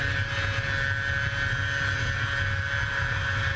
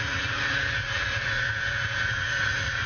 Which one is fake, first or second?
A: second